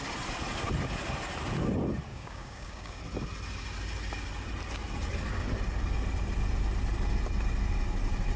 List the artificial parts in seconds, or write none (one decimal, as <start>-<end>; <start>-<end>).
2.1-3.0